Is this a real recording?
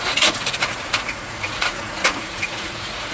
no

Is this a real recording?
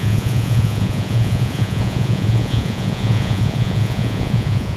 no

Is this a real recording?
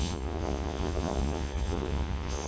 no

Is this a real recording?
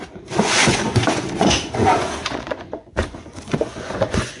no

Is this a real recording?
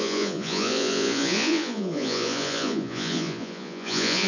no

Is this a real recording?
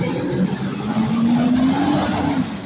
yes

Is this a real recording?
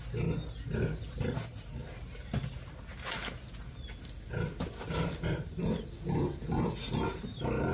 yes